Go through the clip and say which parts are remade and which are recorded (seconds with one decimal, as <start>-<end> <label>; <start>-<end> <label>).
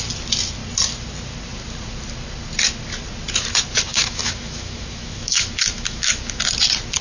0.0-3.9 recorded; 3.9-6.4 remade; 6.4-7.0 recorded